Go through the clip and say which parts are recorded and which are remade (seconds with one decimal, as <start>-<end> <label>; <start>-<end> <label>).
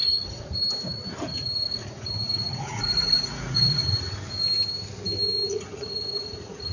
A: 0.0-0.6 remade; 0.6-1.3 recorded; 1.3-4.1 remade; 4.1-5.5 recorded; 5.5-6.7 remade